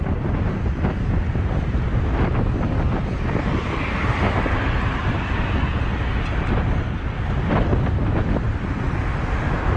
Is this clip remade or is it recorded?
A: recorded